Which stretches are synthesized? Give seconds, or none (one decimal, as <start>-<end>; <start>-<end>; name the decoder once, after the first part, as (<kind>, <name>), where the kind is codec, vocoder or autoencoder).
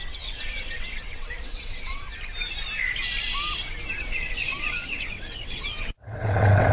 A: 0.0-2.1 (vocoder, WaveNeXt); 4.0-6.7